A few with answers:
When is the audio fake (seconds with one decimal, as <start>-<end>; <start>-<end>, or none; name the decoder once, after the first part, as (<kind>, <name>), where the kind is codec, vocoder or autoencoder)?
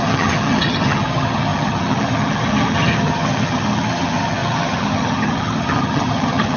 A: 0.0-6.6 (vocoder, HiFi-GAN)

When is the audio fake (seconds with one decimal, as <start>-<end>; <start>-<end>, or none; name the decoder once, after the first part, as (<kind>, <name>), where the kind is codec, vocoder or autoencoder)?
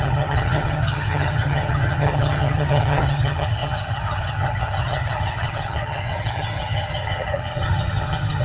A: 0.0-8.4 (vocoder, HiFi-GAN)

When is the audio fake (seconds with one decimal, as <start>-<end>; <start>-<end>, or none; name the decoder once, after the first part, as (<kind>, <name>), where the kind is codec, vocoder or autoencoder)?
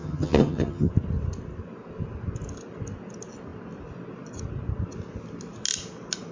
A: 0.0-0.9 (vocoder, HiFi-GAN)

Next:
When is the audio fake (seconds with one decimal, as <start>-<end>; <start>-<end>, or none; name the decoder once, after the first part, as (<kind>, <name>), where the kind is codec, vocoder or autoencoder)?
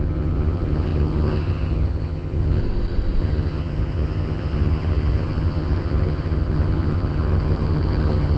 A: 0.0-2.6 (vocoder, HiFi-GAN); 3.2-8.4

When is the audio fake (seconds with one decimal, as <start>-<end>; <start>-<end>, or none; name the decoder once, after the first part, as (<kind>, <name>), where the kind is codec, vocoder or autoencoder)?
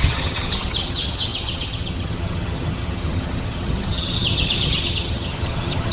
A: 0.0-5.9 (vocoder, HiFi-GAN)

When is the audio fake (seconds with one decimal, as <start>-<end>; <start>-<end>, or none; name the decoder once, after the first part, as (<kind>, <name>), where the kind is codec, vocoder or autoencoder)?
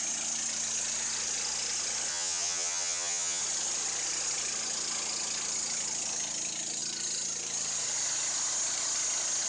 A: 2.1-3.4 (vocoder, HiFi-GAN)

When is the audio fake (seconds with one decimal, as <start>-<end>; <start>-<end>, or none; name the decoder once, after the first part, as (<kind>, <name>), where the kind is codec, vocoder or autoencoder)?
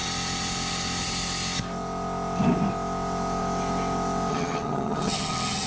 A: 4.3-5.7 (vocoder, HiFi-GAN)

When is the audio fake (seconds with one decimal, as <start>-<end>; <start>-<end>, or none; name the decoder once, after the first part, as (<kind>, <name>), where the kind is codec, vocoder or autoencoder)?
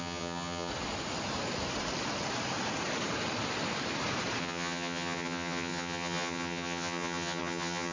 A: 0.0-0.7 (vocoder, HiFi-GAN); 4.4-7.9